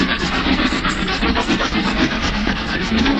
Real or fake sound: fake